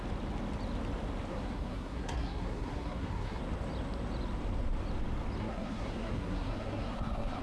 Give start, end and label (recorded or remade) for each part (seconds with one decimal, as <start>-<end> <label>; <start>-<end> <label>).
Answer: 0.0-1.3 recorded; 1.3-3.4 remade; 3.4-5.4 recorded; 5.4-7.4 remade